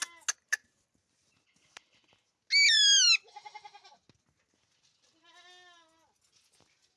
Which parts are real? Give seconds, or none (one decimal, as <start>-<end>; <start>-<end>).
0.0-7.0